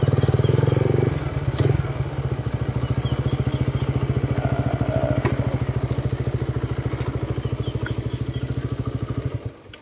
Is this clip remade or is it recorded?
recorded